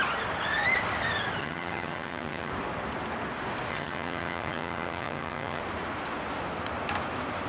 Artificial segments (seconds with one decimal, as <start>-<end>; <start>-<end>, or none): 1.4-2.5; 3.7-5.6